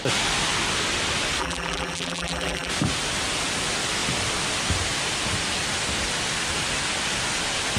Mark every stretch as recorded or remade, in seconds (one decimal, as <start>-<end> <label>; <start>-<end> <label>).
0.0-1.4 recorded; 1.4-2.7 remade; 2.7-7.8 recorded